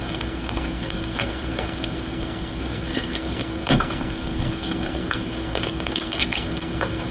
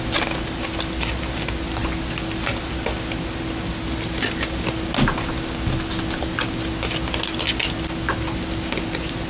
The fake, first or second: first